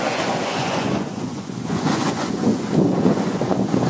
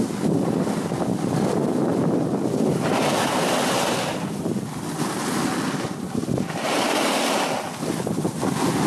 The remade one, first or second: first